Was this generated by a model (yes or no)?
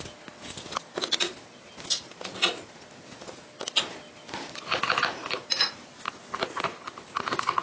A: no